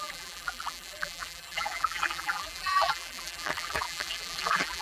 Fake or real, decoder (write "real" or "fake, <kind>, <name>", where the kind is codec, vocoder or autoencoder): fake, vocoder, BigVGAN v2